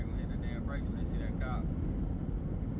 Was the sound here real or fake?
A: real